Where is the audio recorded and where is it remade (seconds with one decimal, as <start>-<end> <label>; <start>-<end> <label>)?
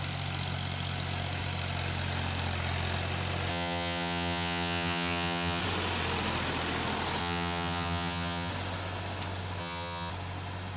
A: 0.0-3.5 recorded; 3.5-5.6 remade; 5.6-7.2 recorded; 7.2-8.5 remade; 8.5-9.6 recorded; 9.6-10.1 remade; 10.1-10.8 recorded